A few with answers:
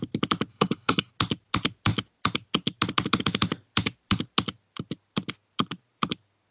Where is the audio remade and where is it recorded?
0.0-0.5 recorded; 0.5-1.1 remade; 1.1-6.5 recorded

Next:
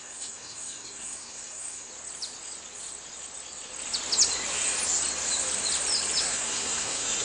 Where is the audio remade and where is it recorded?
0.0-1.9 remade; 1.9-6.2 recorded; 6.2-7.2 remade

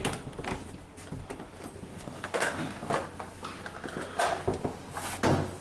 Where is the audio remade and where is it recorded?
0.0-1.9 recorded; 1.9-2.9 remade; 2.9-5.6 recorded

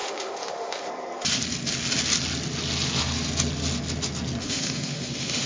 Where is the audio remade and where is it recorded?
0.0-0.9 remade; 0.9-4.4 recorded; 4.4-5.5 remade

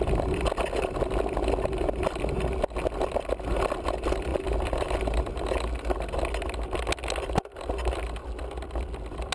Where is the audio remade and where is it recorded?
0.0-4.3 recorded; 4.3-5.5 remade; 5.5-9.3 recorded

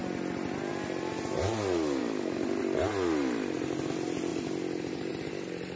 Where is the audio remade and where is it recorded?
0.0-5.8 recorded